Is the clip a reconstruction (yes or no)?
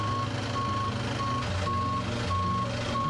no